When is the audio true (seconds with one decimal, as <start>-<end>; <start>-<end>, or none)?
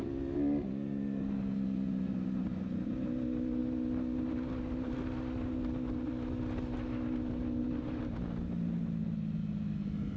0.0-10.2